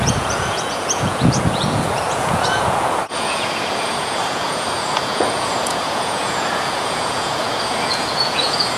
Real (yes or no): no